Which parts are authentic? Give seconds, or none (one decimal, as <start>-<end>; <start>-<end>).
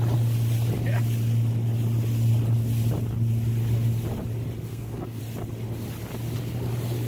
0.0-4.7; 5.2-7.1